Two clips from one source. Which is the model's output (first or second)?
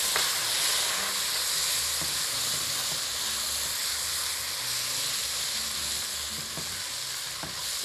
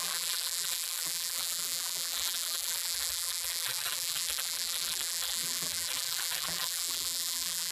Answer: second